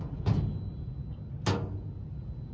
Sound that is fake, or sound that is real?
real